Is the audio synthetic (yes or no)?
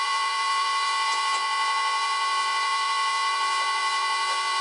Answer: yes